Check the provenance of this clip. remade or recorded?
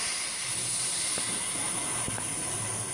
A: recorded